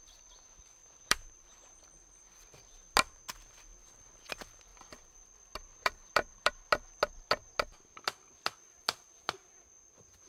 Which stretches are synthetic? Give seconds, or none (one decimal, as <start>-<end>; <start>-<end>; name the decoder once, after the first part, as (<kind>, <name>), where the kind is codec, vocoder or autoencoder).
0.8-1.8 (vocoder, BigVGAN v2); 4.7-6.5